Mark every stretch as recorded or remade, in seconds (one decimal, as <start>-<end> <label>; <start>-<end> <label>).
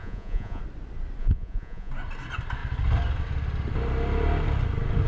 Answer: 0.0-0.6 remade; 0.6-1.2 recorded; 1.2-1.9 remade; 1.9-5.1 recorded